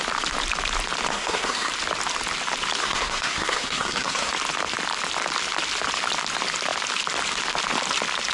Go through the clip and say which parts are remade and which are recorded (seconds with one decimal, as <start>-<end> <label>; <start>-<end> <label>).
0.0-1.1 recorded; 1.1-1.7 remade; 1.7-2.8 recorded; 2.8-4.3 remade; 4.3-8.3 recorded